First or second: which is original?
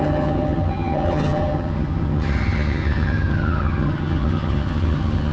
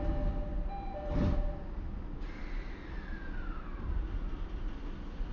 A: second